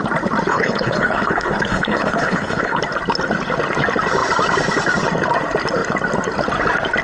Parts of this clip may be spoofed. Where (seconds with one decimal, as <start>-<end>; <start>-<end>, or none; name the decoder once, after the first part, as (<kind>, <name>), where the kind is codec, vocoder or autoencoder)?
0.5-2.8 (codec, HILCodec)